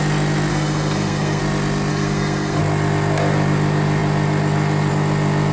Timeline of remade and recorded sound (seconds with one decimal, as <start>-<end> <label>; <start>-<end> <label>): 0.0-0.5 recorded; 0.5-1.4 remade; 1.4-1.9 recorded; 1.9-2.6 remade; 2.6-5.5 recorded